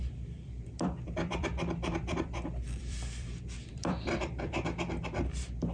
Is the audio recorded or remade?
remade